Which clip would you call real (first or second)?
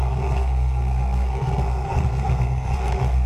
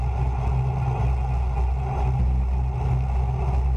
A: second